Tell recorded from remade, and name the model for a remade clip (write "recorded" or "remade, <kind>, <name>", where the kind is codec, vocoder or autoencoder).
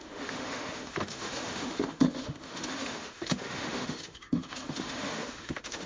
remade, autoencoder, DAC-VAE